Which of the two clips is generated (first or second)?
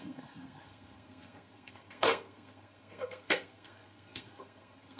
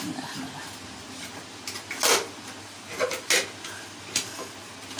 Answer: first